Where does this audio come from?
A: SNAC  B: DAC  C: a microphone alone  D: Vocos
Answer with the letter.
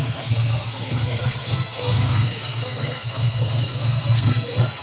A